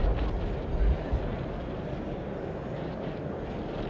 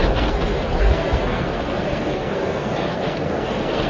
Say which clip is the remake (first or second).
second